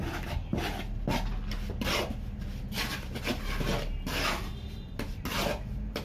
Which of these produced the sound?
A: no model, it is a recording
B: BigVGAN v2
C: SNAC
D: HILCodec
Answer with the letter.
A